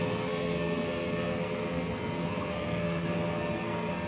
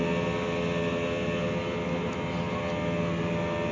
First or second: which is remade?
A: first